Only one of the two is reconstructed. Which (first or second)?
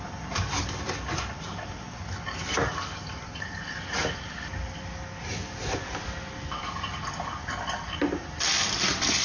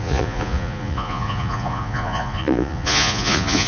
second